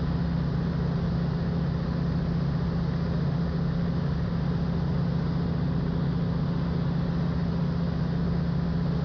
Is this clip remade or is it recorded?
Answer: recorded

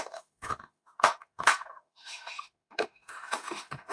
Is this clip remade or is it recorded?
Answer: remade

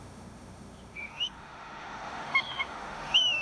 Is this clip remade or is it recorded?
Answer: remade